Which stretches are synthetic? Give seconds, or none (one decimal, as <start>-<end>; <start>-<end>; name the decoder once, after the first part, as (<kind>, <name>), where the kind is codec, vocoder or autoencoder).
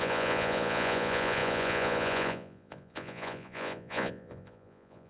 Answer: 0.0-5.1 (vocoder, Vocos)